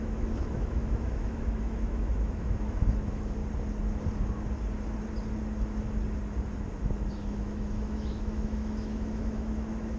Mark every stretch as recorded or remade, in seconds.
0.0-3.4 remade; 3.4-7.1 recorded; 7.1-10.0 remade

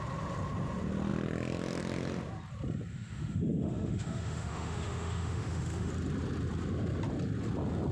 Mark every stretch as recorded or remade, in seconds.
0.0-2.9 recorded; 2.9-5.9 remade; 5.9-7.9 recorded

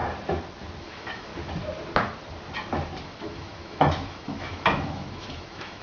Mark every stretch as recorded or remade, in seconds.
0.0-0.8 recorded; 0.8-1.3 remade; 1.3-3.0 recorded; 3.0-5.8 remade

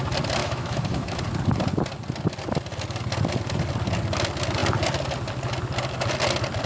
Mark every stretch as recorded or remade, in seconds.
0.0-0.4 recorded; 0.4-1.2 remade; 1.2-6.7 recorded

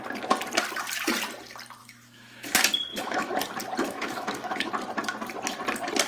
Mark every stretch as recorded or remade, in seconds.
0.0-1.8 recorded; 1.8-2.5 remade; 2.5-2.9 recorded; 2.9-3.4 remade; 3.4-3.8 recorded; 3.8-4.7 remade; 4.7-6.1 recorded

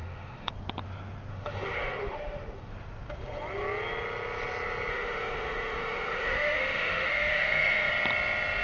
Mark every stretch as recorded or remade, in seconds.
0.0-0.5 remade; 0.5-1.3 recorded; 1.3-2.7 remade; 2.7-4.9 recorded; 4.9-7.9 remade; 7.9-8.6 recorded